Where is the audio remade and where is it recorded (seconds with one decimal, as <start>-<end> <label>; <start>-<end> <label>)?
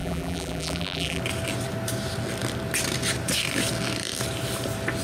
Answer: 0.0-1.2 remade; 1.2-5.0 recorded